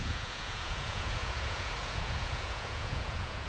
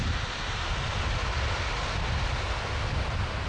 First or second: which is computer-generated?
first